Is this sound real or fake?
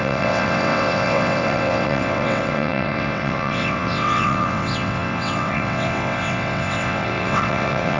fake